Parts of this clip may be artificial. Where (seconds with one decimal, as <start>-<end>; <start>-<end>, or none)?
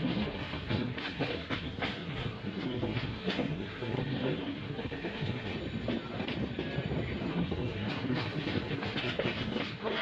0.0-5.5; 7.3-10.0